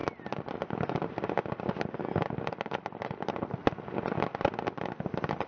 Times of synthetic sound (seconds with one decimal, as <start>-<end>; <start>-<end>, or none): none